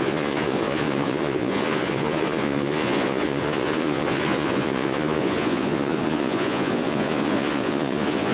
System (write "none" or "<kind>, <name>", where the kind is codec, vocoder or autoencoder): vocoder, Vocos